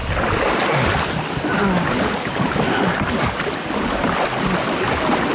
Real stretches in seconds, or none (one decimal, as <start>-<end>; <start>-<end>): 0.0-5.3